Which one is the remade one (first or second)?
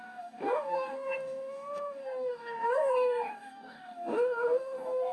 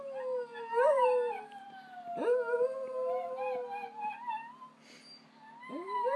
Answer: first